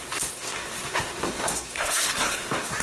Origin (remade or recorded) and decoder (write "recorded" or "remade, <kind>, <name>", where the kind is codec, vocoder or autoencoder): remade, codec, SNAC